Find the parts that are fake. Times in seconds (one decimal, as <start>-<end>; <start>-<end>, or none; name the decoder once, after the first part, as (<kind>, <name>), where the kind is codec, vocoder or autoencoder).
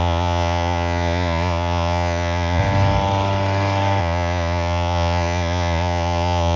0.0-2.6 (vocoder, Vocos); 4.0-6.6